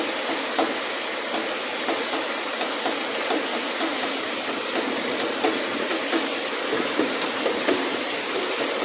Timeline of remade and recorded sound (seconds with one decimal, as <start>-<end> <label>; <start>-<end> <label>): 0.0-3.5 recorded; 3.5-4.3 remade; 4.3-6.7 recorded; 6.7-8.8 remade